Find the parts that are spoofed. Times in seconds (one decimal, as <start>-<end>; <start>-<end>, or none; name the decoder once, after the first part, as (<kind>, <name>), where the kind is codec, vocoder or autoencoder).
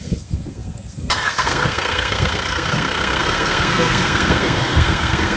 0.0-5.4 (codec, SNAC)